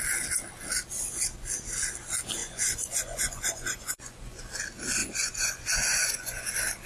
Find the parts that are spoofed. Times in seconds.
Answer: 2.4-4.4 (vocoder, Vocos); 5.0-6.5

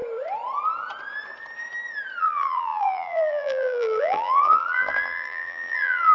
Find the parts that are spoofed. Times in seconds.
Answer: 2.2-6.1 (vocoder, BigVGAN v2)

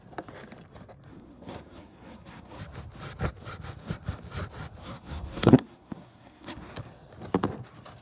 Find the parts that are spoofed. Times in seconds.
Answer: 1.1-2.6 (codec, SNAC); 4.8-6.7

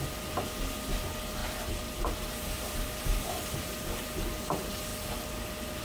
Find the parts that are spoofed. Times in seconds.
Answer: 1.4-4.4 (vocoder, BigVGAN v2)

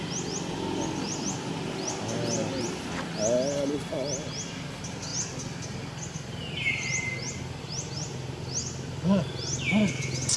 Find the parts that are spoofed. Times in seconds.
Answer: none

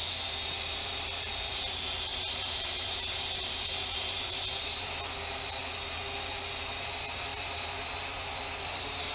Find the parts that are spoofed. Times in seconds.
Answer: 2.1-4.7 (vocoder, BigVGAN v2); 7.3-7.9